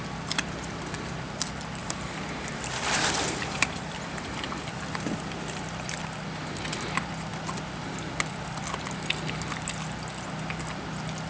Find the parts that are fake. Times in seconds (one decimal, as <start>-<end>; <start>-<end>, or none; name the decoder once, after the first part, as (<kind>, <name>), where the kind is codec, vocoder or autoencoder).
1.8-6.7 (vocoder, BigVGAN v2); 7.3-7.8